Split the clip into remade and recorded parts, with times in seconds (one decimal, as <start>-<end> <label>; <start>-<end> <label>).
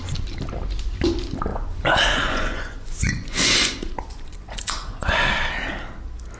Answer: 0.0-1.5 recorded; 1.5-5.3 remade; 5.3-6.4 recorded